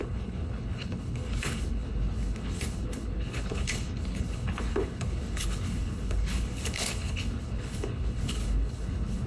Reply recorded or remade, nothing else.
remade